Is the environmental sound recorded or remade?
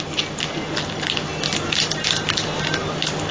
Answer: recorded